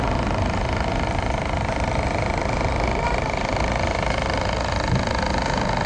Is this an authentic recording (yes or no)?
yes